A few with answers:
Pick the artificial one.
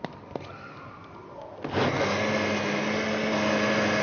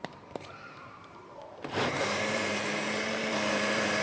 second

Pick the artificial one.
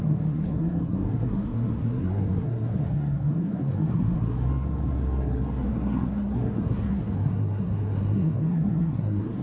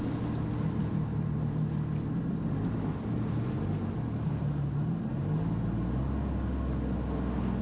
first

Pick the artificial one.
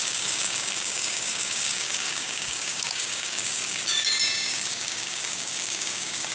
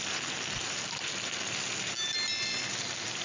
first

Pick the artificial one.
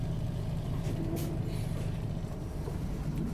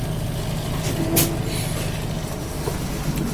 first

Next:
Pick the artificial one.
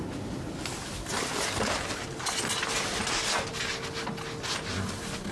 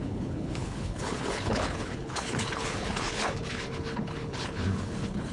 second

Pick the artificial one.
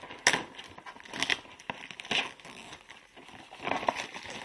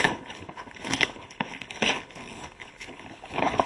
second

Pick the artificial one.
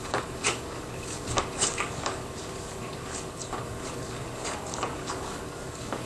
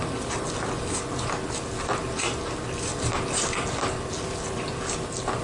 first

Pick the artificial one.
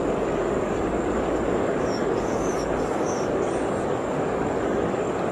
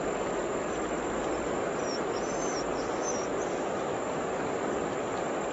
first